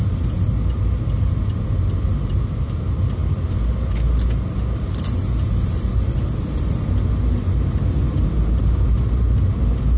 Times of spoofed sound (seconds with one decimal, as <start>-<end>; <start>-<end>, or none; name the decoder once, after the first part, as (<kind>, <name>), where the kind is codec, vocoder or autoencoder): none